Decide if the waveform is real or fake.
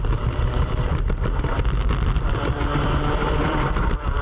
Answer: fake